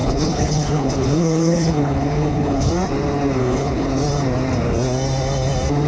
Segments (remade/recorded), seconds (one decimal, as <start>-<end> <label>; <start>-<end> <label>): 0.0-2.7 remade; 2.7-3.4 recorded; 3.4-3.9 remade; 3.9-5.9 recorded